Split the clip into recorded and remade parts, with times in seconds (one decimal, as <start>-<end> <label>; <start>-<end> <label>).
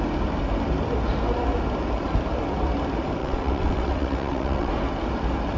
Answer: 0.0-3.2 recorded; 3.2-4.7 remade; 4.7-5.6 recorded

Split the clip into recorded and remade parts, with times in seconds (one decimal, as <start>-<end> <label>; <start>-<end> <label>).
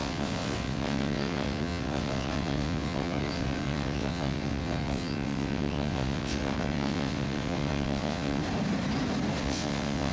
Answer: 0.0-8.4 remade; 8.4-9.4 recorded; 9.4-10.1 remade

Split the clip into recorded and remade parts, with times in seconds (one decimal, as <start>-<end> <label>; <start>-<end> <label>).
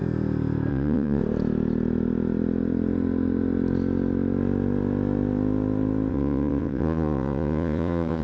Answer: 0.0-0.7 recorded; 0.7-1.2 remade; 1.2-6.1 recorded; 6.1-8.2 remade